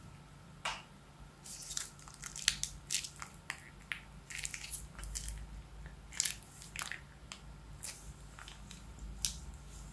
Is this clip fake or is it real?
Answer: real